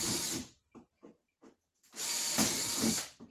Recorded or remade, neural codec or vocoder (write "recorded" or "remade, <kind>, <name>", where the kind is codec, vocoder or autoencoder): remade, vocoder, BigVGAN v2